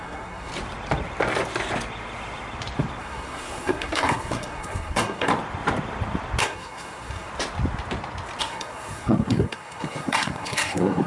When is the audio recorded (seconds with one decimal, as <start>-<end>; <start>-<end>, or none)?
0.5-3.0; 5.3-6.4; 7.3-8.4